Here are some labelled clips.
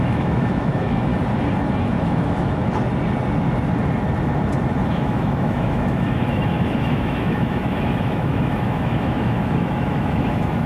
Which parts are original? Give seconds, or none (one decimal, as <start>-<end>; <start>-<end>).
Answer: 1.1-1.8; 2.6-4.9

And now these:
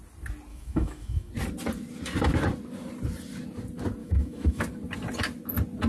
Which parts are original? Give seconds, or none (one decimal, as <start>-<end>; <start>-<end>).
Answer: 0.0-0.5; 1.3-4.0; 4.6-5.9

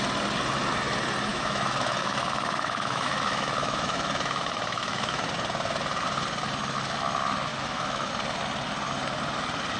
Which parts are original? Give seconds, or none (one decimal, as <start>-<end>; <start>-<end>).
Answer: 0.0-1.3; 5.2-7.5; 8.1-9.8